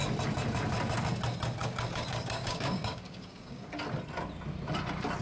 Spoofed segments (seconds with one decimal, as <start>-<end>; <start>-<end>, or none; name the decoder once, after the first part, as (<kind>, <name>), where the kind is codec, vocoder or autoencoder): 1.6-3.7 (codec, DAC)